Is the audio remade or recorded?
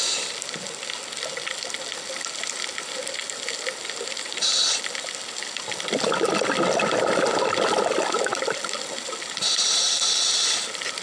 recorded